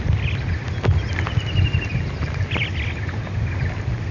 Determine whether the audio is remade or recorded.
recorded